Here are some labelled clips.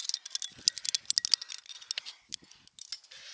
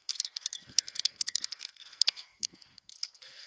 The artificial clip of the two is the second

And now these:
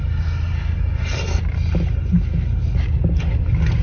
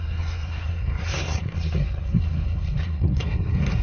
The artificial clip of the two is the second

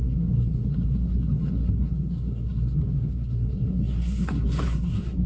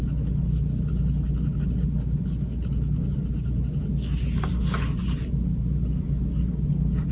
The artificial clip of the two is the first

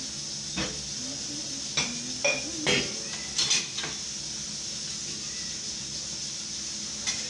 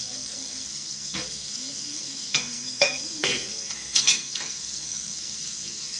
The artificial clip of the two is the second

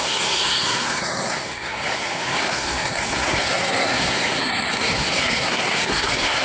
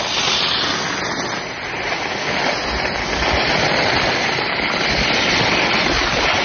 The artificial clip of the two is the first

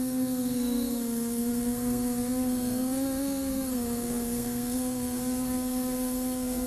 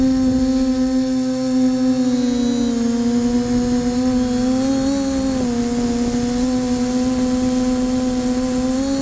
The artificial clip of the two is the first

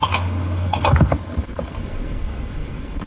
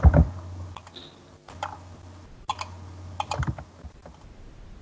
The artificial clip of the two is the first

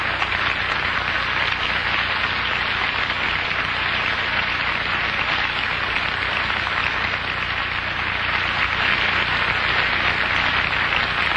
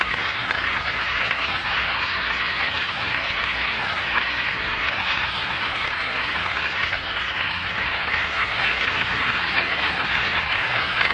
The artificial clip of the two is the second